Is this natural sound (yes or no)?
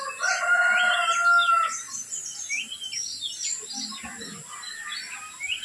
yes